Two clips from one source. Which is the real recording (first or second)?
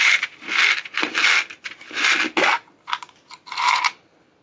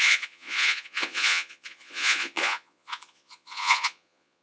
first